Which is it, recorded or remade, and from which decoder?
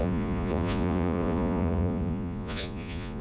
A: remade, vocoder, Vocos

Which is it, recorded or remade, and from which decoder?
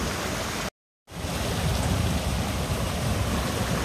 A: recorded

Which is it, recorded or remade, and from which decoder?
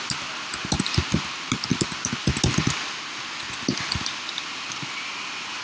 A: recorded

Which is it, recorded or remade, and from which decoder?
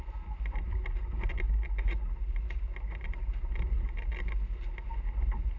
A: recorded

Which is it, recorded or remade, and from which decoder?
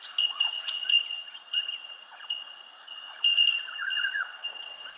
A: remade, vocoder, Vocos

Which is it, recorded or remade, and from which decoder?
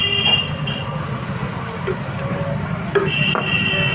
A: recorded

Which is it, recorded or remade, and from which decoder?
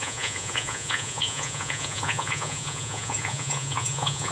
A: remade, vocoder, Vocos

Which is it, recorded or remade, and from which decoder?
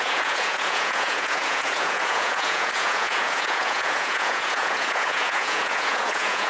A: remade, vocoder, Vocos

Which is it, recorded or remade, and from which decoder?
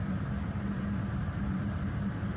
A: recorded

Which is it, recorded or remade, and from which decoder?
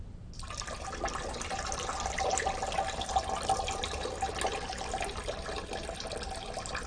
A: recorded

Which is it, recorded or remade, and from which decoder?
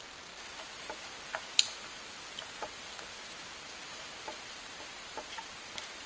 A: recorded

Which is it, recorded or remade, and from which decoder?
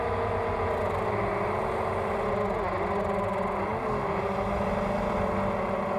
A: recorded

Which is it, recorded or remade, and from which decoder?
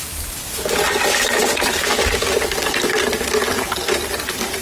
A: recorded